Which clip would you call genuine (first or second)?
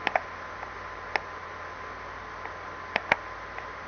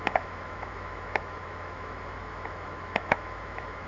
first